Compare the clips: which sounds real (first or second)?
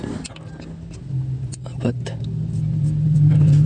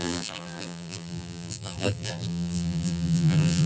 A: first